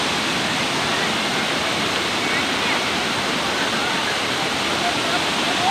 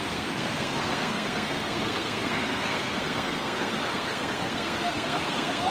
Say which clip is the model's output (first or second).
second